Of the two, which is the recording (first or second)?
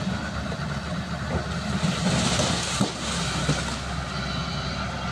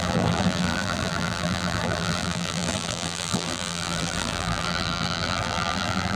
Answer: first